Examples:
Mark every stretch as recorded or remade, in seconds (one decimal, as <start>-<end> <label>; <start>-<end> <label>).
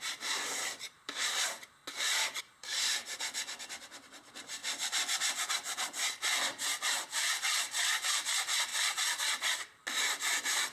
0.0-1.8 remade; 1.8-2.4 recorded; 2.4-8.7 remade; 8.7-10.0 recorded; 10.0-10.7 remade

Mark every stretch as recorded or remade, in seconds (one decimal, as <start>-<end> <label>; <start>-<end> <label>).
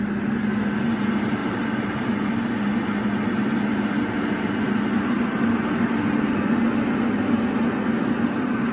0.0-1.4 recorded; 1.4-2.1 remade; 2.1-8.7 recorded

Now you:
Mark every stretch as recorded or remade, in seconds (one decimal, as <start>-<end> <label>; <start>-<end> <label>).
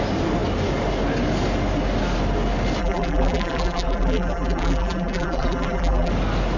0.0-2.8 recorded; 2.8-6.1 remade; 6.1-6.6 recorded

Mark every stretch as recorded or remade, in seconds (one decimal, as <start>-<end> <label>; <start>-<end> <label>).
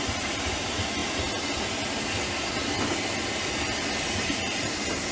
0.0-1.0 remade; 1.0-4.1 recorded; 4.1-5.1 remade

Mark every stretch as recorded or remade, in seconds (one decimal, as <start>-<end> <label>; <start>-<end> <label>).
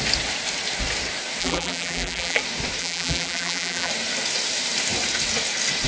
0.0-1.4 recorded; 1.4-2.4 remade; 2.4-2.8 recorded; 2.8-3.9 remade; 3.9-5.9 recorded